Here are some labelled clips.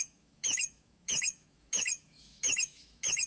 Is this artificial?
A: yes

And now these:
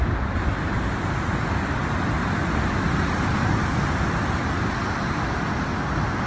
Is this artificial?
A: no